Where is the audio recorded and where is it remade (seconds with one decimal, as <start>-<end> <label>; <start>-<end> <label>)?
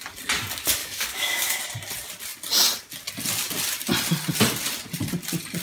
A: 0.0-0.8 recorded; 0.8-1.6 remade; 1.6-5.6 recorded